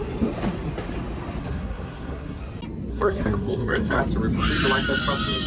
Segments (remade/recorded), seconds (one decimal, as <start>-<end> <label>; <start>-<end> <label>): 0.0-1.4 recorded; 1.4-2.4 remade; 2.4-2.9 recorded; 2.9-4.0 remade; 4.0-5.5 recorded